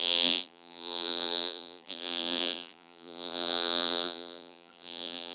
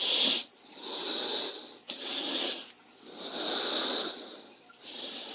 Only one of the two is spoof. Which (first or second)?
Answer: first